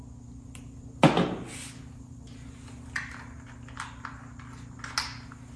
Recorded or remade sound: recorded